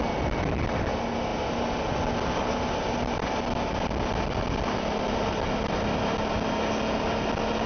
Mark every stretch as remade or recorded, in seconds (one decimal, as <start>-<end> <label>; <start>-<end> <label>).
0.0-7.7 recorded